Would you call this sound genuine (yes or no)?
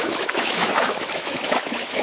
no